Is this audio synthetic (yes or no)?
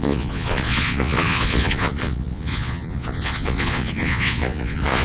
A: yes